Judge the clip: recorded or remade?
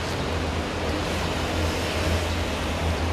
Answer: recorded